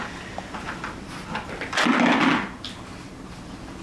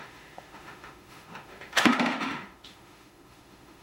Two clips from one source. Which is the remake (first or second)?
second